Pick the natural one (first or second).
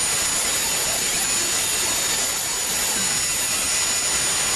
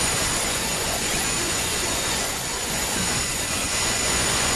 first